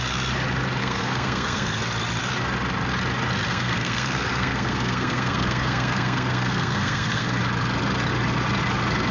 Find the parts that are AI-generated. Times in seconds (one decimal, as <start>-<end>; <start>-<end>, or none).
0.8-1.8; 3.5-7.4